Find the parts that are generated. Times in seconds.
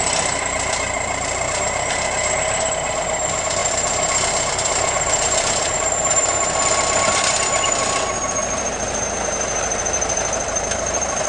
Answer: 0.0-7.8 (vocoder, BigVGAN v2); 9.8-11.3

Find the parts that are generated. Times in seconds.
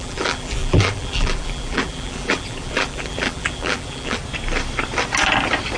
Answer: 0.0-4.2 (vocoder, BigVGAN v2)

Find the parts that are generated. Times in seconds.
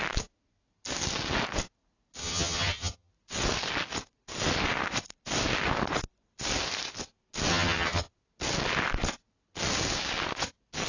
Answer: 2.2-3.1 (vocoder, HiFi-GAN); 7.5-8.1